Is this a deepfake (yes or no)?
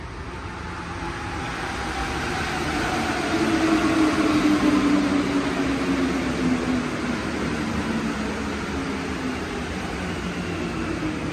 no